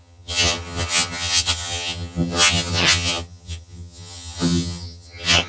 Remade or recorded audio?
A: remade